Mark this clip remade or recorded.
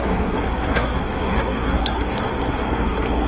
remade